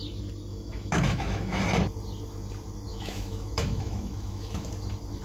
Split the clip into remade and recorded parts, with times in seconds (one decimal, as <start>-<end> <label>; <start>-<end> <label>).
0.0-0.5 recorded; 0.5-1.6 remade; 1.6-2.9 recorded; 2.9-4.7 remade; 4.7-5.2 recorded